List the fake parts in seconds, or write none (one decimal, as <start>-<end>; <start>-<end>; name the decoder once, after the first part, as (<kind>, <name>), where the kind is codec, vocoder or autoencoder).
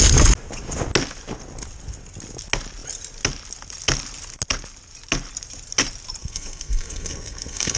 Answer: 6.2-7.8 (codec, SNAC)